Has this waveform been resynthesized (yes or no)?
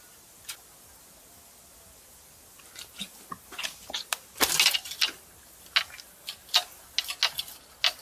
no